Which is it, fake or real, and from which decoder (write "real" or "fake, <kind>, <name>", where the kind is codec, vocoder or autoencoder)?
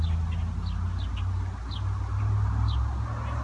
real